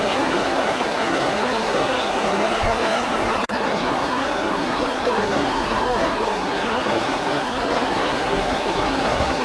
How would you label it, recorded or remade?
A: remade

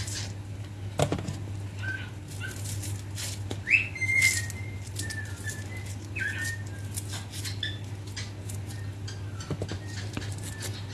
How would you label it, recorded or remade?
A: recorded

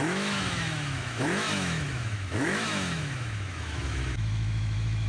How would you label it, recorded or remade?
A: remade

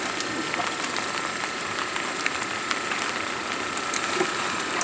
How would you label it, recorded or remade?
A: recorded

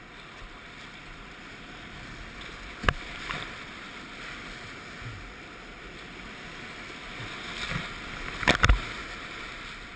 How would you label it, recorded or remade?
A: recorded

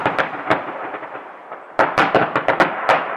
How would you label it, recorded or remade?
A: recorded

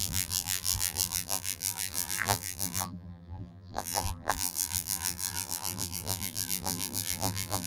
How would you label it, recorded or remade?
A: remade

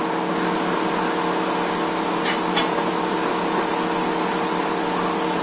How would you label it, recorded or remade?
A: recorded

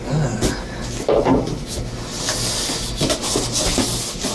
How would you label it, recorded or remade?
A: recorded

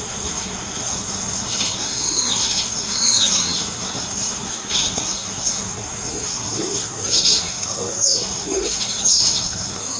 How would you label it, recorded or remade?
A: remade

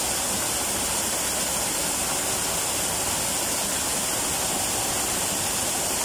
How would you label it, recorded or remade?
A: recorded